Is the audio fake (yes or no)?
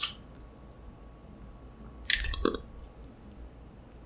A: no